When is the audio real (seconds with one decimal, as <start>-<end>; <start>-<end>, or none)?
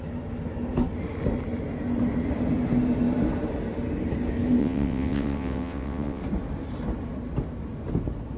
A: 0.0-4.6; 6.2-8.4